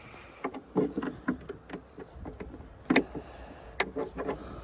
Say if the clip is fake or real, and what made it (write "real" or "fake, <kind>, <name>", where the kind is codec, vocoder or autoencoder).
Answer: real